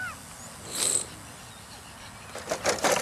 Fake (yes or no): no